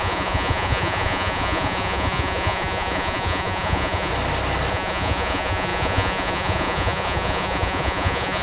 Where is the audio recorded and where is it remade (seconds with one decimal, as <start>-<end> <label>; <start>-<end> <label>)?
0.0-4.1 remade; 4.1-4.7 recorded; 4.7-8.4 remade